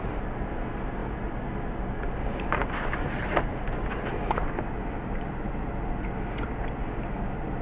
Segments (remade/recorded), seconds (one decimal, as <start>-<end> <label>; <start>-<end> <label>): 0.0-7.6 recorded